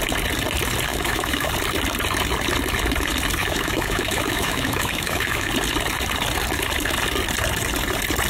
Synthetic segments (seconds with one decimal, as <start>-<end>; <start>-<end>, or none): 0.9-1.5; 3.4-5.5